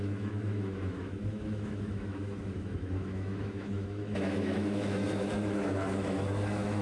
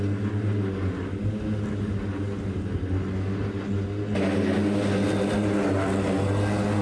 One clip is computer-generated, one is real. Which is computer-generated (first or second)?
first